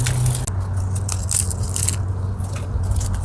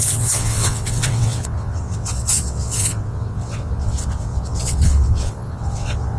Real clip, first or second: first